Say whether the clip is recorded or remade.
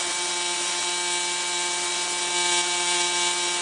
recorded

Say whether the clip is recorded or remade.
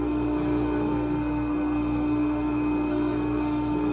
remade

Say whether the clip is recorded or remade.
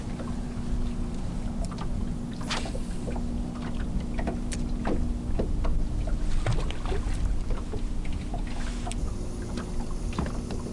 recorded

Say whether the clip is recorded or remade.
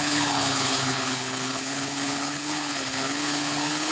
remade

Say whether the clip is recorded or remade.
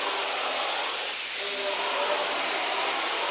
recorded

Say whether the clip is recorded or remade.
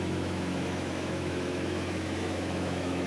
remade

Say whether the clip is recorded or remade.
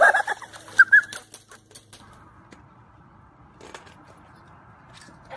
recorded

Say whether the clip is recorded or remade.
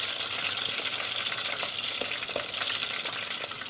recorded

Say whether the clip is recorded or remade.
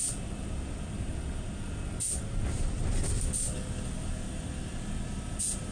recorded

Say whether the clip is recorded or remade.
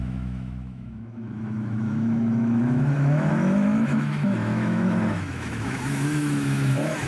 remade